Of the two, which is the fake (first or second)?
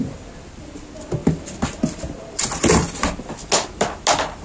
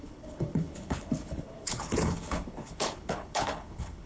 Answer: second